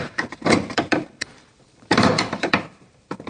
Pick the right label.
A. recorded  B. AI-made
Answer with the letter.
B